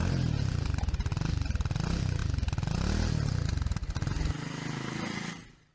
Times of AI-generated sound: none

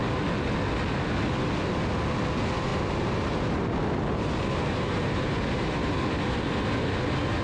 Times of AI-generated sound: 2.7-5.9 (vocoder, BigVGAN v2)

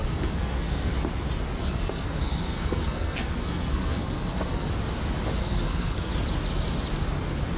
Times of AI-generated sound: 0.0-0.9 (codec, SNAC); 1.6-4.7; 5.4-6.1

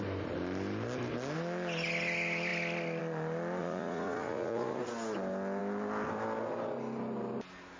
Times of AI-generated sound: 3.6-4.8 (vocoder, Vocos)

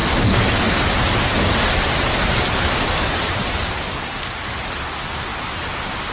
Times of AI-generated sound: none

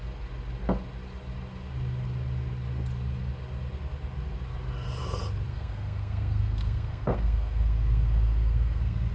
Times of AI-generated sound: 5.5-9.1 (codec, SNAC)

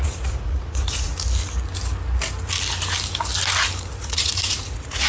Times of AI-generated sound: 0.0-1.1 (vocoder, Vocos); 4.0-5.1